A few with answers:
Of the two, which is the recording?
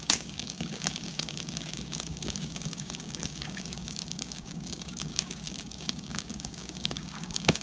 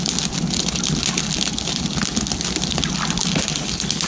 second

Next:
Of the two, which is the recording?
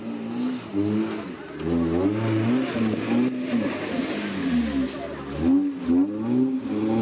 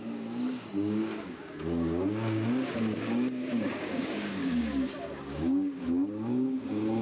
first